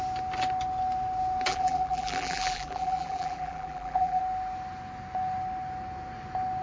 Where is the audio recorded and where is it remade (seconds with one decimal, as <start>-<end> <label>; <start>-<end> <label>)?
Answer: 0.0-1.5 recorded; 1.5-4.2 remade; 4.2-6.6 recorded